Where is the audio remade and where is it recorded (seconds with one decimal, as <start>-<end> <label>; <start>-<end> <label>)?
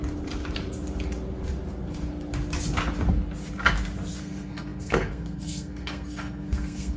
0.0-4.2 recorded; 4.2-7.0 remade